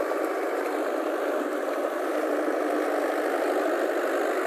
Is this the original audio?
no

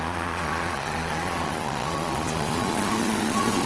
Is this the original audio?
no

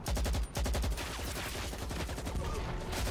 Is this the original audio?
yes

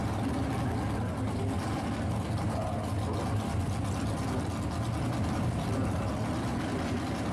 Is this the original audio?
yes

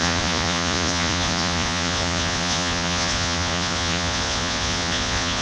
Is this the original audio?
no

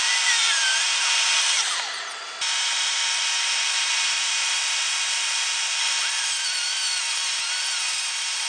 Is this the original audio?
no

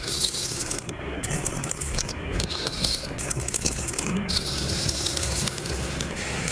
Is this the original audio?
no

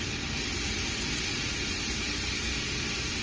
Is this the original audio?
yes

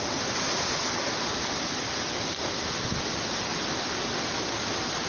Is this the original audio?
yes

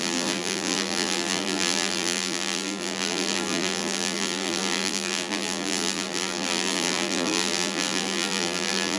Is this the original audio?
no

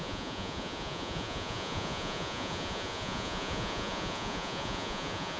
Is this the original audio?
no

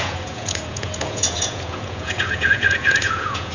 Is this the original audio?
no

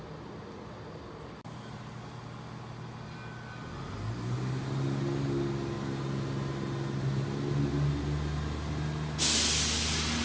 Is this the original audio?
yes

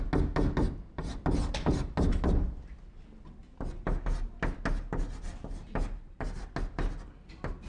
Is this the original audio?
yes